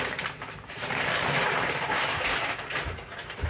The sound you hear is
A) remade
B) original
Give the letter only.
A